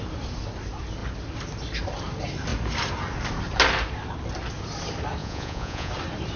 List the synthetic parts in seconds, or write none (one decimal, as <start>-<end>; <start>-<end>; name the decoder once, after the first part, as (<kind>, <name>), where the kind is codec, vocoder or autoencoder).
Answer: 5.2-5.9 (vocoder, Vocos)